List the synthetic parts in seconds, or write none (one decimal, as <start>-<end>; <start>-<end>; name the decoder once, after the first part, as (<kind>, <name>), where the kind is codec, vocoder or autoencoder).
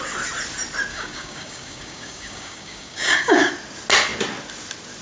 0.9-3.5 (codec, DAC)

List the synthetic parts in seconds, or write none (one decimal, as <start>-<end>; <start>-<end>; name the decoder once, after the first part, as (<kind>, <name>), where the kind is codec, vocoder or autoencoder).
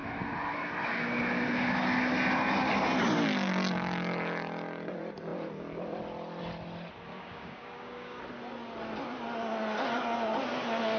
7.1-8.2 (codec, DAC)